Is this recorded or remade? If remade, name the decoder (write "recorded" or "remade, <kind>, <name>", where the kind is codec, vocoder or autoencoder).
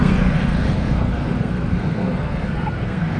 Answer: remade, codec, SNAC